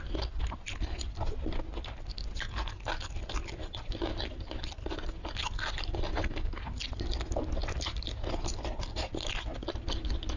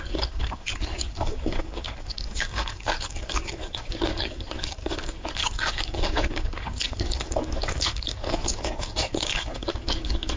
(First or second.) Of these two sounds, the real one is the first